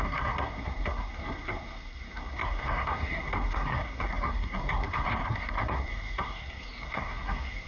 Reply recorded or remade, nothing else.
remade